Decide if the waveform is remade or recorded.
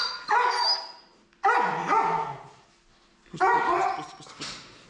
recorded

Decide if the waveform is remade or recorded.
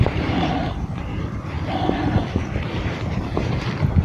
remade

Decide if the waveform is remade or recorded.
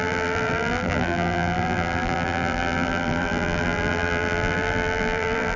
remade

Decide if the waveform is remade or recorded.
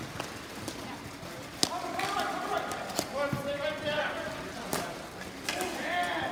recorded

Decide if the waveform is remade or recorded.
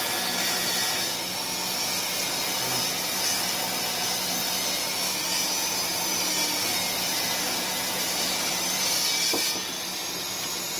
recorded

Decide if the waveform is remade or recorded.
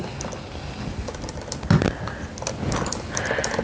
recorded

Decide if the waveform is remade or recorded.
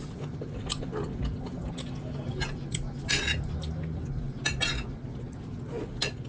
recorded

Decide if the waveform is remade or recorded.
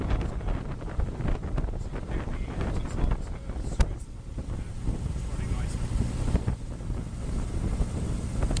recorded